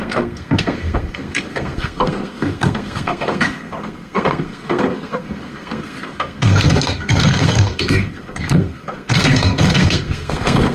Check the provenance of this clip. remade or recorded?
remade